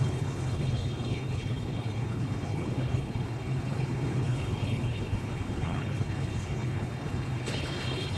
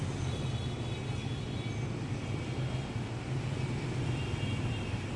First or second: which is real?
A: second